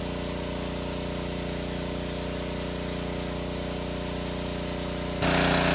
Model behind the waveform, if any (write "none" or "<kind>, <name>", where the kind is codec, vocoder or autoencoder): none